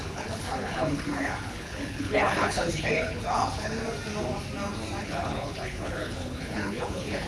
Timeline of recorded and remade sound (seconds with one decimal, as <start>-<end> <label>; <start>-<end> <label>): 0.0-3.8 remade; 3.8-5.0 recorded; 5.0-7.3 remade

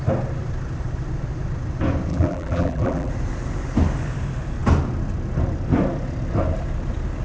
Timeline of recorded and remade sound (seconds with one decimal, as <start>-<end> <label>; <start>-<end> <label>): 0.0-2.1 recorded; 2.1-3.1 remade; 3.1-7.2 recorded

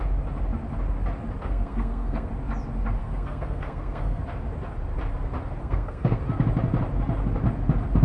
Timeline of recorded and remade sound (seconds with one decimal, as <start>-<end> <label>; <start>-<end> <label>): 0.0-1.4 recorded; 1.4-2.3 remade; 2.3-3.0 recorded; 3.0-4.2 remade; 4.2-5.6 recorded; 5.6-6.2 remade; 6.2-8.0 recorded

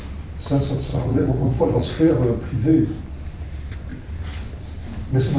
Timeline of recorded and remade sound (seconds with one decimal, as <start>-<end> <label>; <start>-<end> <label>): 0.0-0.9 recorded; 0.9-2.1 remade; 2.1-5.4 recorded

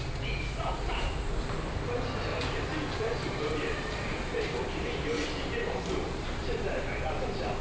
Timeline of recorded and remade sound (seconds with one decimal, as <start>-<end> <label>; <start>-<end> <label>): 0.0-2.3 recorded; 2.3-4.6 remade; 4.6-5.6 recorded; 5.6-6.3 remade; 6.3-7.6 recorded

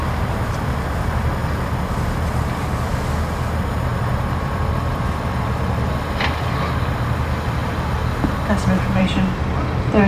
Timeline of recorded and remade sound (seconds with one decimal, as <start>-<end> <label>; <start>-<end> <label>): 0.0-3.9 recorded; 3.9-5.9 remade; 5.9-10.1 recorded

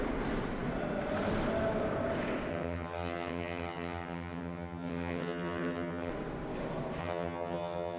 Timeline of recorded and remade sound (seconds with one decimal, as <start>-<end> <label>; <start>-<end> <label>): 0.0-2.5 recorded; 2.5-6.1 remade; 6.1-7.0 recorded; 7.0-8.0 remade

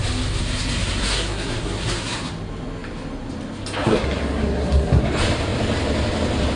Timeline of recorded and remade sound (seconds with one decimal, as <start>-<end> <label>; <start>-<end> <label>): 0.0-0.4 recorded; 0.4-2.3 remade; 2.3-3.8 recorded; 3.8-5.0 remade; 5.0-6.6 recorded